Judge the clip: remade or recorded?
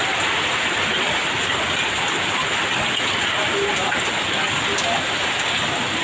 recorded